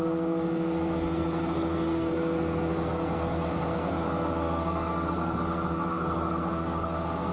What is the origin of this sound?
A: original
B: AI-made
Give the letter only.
B